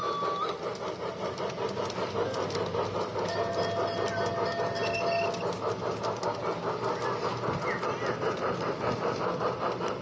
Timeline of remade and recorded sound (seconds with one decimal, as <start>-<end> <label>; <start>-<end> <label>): 0.0-10.0 recorded